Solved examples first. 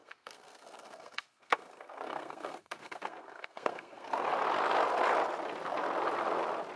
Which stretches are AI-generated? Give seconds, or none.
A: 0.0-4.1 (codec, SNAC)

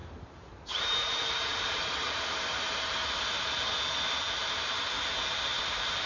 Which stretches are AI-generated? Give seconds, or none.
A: 0.0-3.7 (vocoder, BigVGAN v2); 5.5-6.1

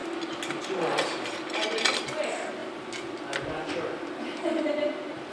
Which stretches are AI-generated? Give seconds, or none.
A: none

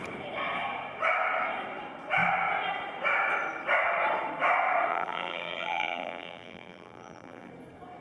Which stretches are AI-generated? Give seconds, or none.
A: 4.9-7.5 (vocoder, BigVGAN v2)

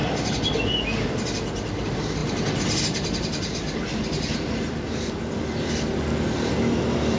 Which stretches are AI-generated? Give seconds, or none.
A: none

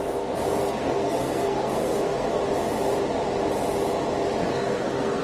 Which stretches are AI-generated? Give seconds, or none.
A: 0.0-2.4 (codec, SNAC); 4.5-5.2